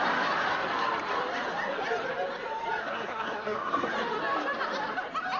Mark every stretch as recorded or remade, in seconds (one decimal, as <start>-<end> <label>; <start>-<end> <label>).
0.0-2.8 recorded; 2.8-3.9 remade; 3.9-5.4 recorded